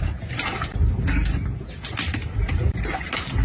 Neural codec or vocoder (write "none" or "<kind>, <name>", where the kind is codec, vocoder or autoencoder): none